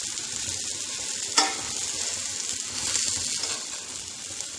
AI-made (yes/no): no